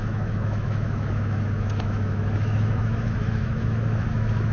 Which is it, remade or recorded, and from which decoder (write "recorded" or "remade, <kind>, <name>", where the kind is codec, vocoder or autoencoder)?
remade, autoencoder, DAC-VAE